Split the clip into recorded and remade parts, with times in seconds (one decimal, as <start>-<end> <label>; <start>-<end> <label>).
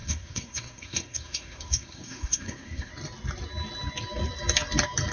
0.0-2.9 remade; 2.9-5.1 recorded